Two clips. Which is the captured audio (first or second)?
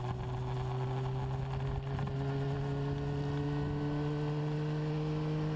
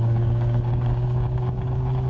first